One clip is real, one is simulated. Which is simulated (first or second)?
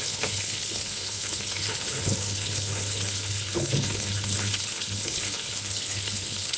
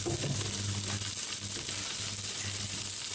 first